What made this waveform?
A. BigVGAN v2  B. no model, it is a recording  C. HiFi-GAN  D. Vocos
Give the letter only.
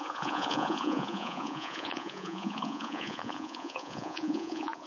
D